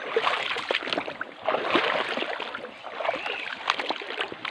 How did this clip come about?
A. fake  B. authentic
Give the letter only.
B